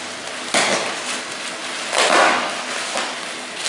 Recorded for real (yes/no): yes